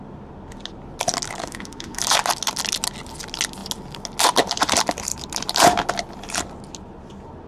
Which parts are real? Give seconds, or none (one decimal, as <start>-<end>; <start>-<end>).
0.0-1.4; 2.0-7.5